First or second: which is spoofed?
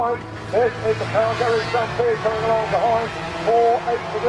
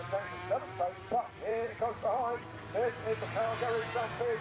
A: second